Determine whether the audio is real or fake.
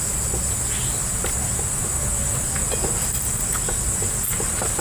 real